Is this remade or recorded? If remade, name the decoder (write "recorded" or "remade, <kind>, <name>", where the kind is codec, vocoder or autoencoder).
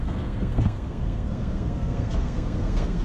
remade, codec, SNAC